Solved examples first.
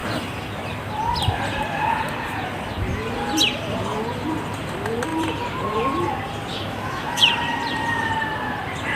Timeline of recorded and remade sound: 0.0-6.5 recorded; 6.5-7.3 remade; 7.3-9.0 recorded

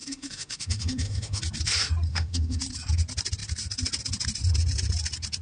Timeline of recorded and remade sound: 0.0-1.4 remade; 1.4-2.1 recorded; 2.1-2.6 remade; 2.6-5.4 recorded

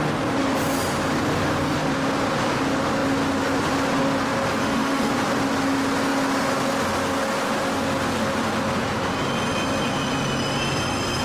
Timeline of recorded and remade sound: 0.0-4.6 recorded; 4.6-5.1 remade; 5.1-11.2 recorded

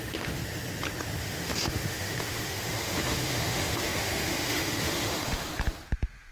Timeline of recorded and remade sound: 0.0-0.4 remade; 0.4-1.2 recorded; 1.2-5.5 remade; 5.5-6.3 recorded